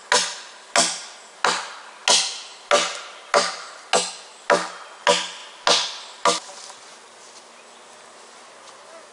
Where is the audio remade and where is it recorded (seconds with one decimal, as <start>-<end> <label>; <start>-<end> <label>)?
0.0-9.1 recorded